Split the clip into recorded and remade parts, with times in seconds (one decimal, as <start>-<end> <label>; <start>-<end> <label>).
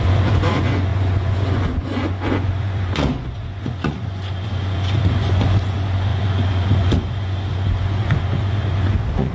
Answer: 0.0-9.3 remade